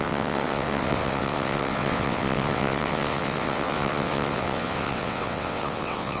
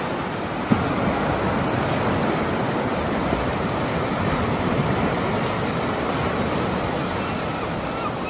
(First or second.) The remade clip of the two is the first